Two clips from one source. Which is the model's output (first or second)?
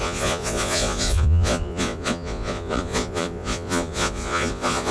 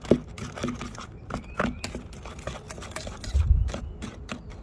first